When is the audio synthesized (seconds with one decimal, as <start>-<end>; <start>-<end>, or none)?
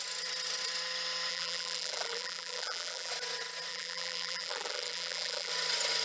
1.3-3.1; 3.7-5.5